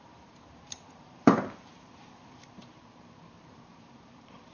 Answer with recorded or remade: remade